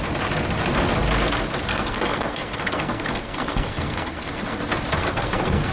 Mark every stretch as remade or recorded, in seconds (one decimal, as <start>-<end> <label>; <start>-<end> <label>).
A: 0.0-1.7 recorded; 1.7-4.6 remade; 4.6-5.0 recorded; 5.0-5.7 remade